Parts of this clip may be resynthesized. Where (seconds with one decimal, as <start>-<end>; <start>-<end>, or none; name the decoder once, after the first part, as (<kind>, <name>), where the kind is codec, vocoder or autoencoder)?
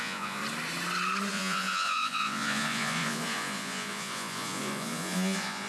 0.0-0.4 (vocoder, Vocos); 1.3-5.7